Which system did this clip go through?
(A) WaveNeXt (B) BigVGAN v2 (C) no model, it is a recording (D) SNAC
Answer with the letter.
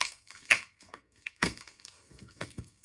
D